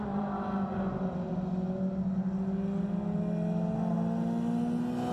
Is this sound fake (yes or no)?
no